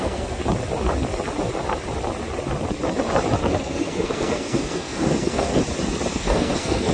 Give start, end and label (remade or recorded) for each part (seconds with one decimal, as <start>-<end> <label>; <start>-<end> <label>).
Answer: 0.0-0.4 remade; 0.4-3.4 recorded; 3.4-5.5 remade; 5.5-6.1 recorded; 6.1-6.9 remade